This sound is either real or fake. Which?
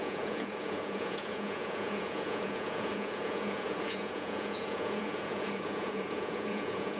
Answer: fake